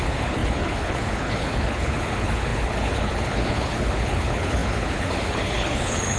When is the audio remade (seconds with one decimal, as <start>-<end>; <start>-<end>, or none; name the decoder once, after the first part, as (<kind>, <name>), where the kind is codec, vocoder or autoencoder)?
0.0-6.2 (codec, HILCodec)